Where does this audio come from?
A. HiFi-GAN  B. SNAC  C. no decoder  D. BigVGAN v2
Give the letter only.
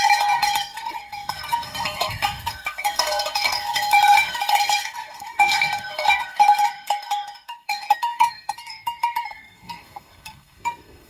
B